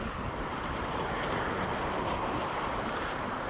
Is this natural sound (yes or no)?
no